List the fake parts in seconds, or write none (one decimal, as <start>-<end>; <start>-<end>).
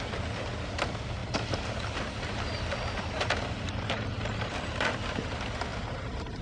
1.2-5.0